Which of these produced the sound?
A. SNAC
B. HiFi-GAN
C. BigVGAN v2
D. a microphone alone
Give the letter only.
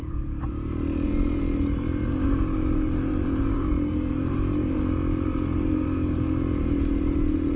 C